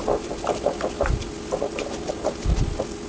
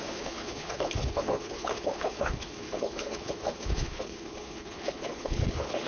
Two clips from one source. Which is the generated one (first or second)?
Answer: second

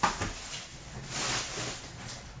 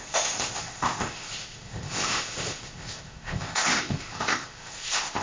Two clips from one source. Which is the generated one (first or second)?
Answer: second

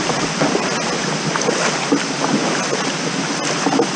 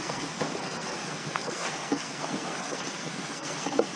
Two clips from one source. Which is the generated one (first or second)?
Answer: second